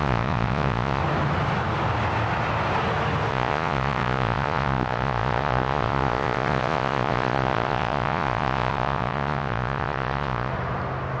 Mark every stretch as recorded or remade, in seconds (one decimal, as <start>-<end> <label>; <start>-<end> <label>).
0.0-1.0 remade; 1.0-3.3 recorded; 3.3-10.5 remade; 10.5-11.2 recorded